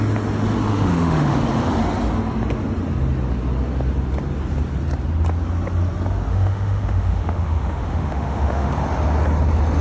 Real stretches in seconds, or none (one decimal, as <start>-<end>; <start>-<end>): 0.0-0.7; 1.4-6.3; 8.7-9.8